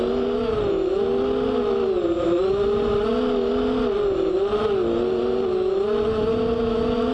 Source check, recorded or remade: recorded